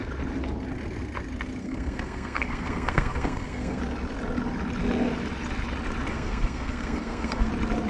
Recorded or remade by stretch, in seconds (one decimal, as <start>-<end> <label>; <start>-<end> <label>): 0.0-1.6 recorded; 1.6-3.8 remade; 3.8-6.1 recorded; 6.1-7.5 remade; 7.5-7.9 recorded